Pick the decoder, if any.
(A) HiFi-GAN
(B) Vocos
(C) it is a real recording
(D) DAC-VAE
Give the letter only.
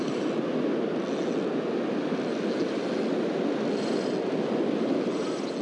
C